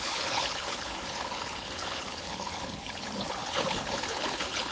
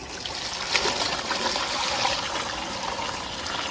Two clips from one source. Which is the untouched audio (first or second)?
second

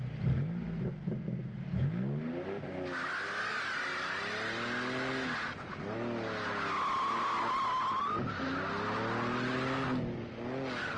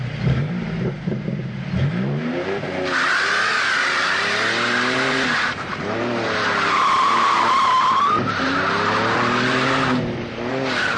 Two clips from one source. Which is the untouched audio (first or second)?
first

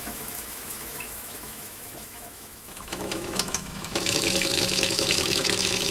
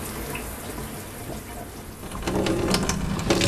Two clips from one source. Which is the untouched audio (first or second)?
second